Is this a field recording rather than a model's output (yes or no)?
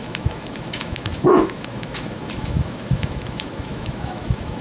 no